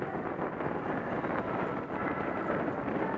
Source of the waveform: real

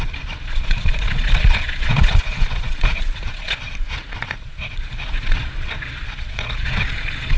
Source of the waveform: fake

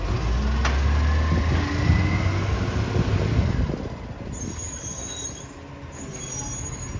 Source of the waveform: real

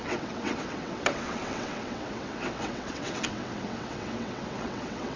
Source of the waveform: fake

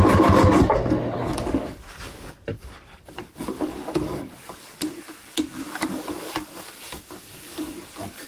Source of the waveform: fake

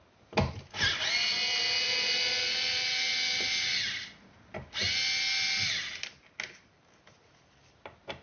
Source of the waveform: real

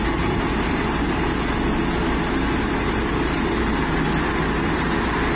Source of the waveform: real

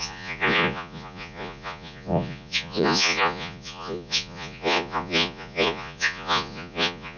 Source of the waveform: fake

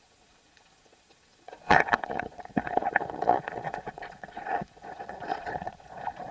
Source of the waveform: fake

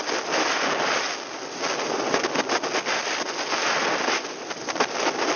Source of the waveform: real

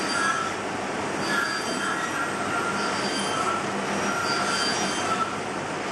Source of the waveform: real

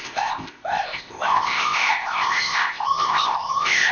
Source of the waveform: fake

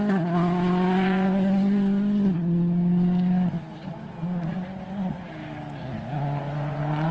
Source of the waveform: real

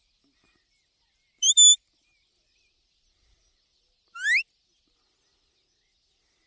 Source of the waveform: real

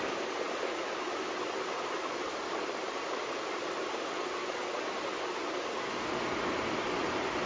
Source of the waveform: real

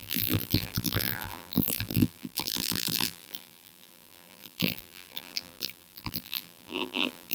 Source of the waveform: fake